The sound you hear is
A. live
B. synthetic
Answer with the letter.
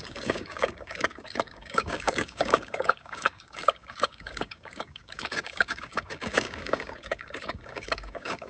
B